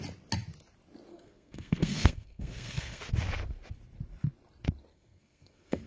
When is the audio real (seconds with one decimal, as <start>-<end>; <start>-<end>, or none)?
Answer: 0.0-1.1; 3.0-4.9

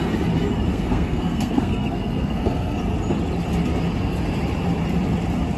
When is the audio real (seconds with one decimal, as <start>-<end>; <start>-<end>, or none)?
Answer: 0.0-0.7; 2.8-5.6

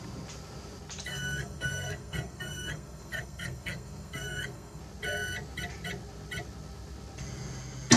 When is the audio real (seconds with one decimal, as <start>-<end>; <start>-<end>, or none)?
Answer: 0.0-1.1; 4.8-8.0

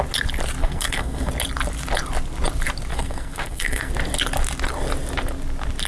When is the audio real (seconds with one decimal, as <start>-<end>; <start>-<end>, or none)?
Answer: 0.0-0.6; 1.3-2.9; 3.9-5.9

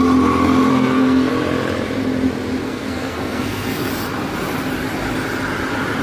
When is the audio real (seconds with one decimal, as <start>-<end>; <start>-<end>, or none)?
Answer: 0.0-0.7; 1.3-2.6; 3.9-6.0

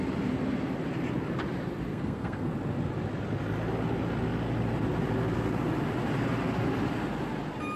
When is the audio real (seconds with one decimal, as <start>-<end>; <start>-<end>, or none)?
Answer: 0.0-1.9; 2.5-7.8

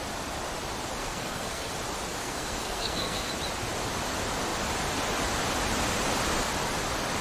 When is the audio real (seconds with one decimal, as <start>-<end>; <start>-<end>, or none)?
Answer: 0.0-1.0; 1.7-2.2; 3.3-7.2